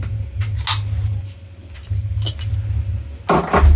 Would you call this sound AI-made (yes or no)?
no